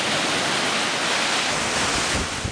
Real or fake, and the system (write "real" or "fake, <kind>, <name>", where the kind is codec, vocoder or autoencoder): real